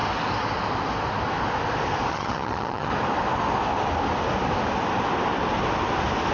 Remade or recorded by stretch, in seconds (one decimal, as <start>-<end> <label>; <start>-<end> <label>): 0.0-2.1 recorded; 2.1-2.9 remade; 2.9-6.3 recorded